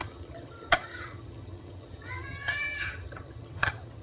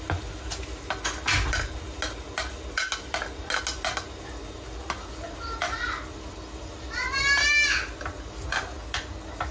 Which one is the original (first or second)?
second